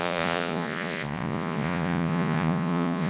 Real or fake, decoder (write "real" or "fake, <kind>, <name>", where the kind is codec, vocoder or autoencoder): fake, vocoder, Vocos